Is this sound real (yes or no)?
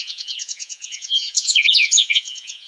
no